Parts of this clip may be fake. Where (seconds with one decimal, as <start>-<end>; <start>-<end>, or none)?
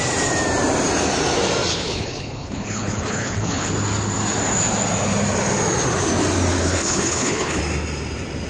1.7-3.7; 6.6-7.6